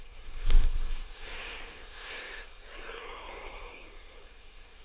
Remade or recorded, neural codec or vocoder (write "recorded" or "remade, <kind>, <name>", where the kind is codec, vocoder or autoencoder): remade, codec, SNAC